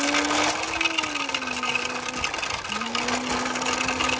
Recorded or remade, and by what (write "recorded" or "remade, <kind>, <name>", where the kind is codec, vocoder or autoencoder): recorded